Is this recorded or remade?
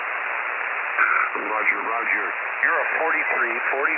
recorded